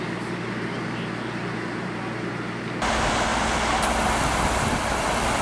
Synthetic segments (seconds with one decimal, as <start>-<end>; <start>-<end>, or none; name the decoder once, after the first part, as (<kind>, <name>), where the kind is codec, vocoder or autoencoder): none

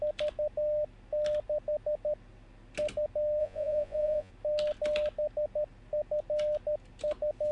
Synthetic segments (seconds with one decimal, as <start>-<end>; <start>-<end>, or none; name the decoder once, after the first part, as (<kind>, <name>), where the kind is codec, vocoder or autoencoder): 3.4-4.3 (vocoder, Vocos)

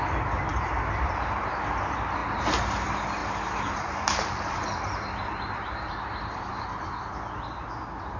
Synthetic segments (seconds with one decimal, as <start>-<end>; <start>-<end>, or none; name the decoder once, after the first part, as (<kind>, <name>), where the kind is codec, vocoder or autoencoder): 3.2-7.7 (vocoder, BigVGAN v2)

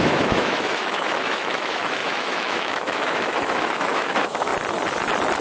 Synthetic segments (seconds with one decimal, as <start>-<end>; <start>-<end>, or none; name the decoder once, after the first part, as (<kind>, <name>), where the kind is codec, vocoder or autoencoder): 0.0-4.5 (autoencoder, DAC-VAE)

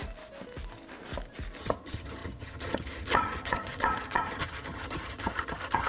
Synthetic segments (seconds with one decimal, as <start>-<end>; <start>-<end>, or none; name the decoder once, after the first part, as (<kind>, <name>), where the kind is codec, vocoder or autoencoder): 1.6-5.9 (vocoder, HiFi-GAN)

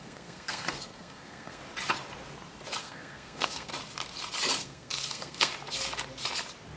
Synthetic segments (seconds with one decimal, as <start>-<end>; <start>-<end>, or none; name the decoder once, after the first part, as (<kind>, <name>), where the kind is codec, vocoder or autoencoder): 0.0-1.6 (codec, SNAC); 2.8-3.7; 4.6-5.5

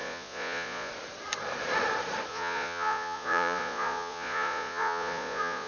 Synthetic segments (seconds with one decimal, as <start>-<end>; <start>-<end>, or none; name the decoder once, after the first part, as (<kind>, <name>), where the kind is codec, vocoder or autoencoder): 0.0-0.9 (vocoder, Vocos); 2.3-5.7

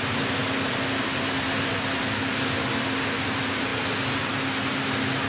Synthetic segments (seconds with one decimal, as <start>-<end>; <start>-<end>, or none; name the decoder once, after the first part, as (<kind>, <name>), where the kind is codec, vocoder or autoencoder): none